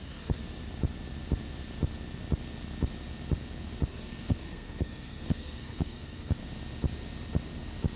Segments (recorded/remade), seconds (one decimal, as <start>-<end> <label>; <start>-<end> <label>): 0.0-0.4 remade; 0.4-3.9 recorded; 3.9-6.4 remade; 6.4-8.0 recorded